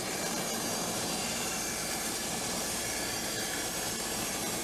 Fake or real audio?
fake